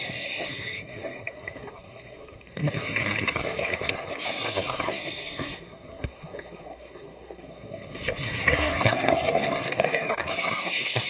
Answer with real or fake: fake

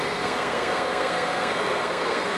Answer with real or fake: fake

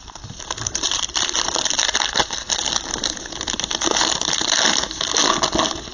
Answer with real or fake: real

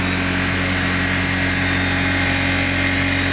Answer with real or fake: real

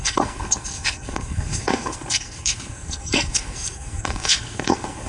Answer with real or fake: fake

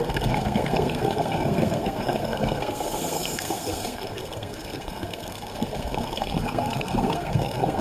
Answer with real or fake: fake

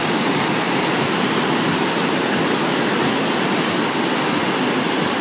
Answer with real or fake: real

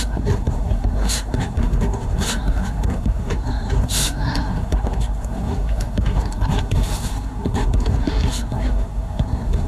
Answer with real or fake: fake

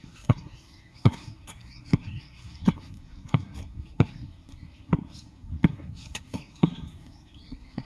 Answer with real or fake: fake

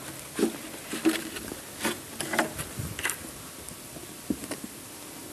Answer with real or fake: real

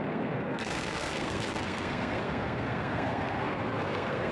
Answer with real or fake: fake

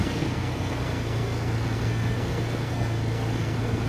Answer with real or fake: fake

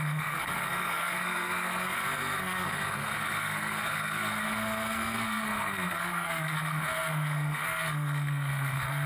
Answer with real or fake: fake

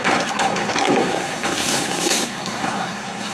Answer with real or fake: fake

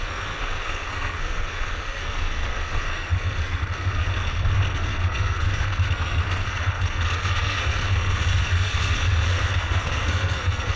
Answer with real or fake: fake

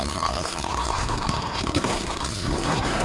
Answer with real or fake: fake